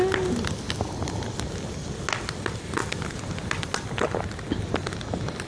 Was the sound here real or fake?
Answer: real